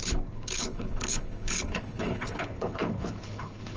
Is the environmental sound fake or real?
fake